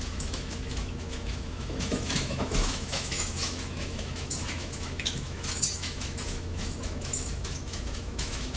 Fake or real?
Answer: fake